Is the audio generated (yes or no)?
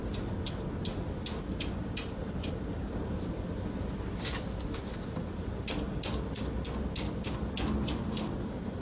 no